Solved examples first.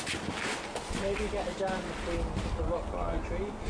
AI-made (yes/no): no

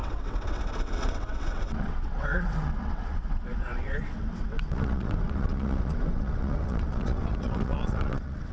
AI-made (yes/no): yes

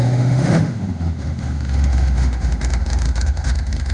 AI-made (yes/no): yes